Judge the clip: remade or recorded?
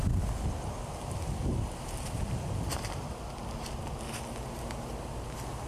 recorded